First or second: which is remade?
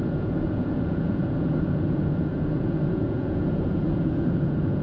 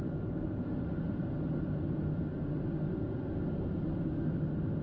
first